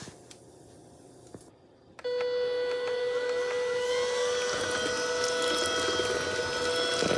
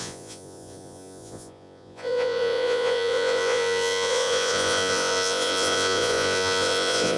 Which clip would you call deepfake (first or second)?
second